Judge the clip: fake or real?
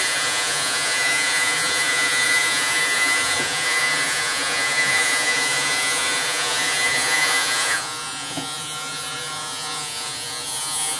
fake